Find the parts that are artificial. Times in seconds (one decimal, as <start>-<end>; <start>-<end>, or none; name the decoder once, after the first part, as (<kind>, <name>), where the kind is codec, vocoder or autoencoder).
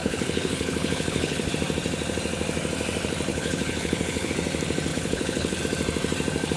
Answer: 0.0-1.5 (codec, HILCodec); 3.3-4.3; 4.9-5.6